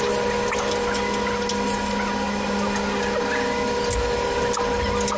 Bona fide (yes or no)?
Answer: yes